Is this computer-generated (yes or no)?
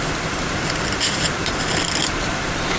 no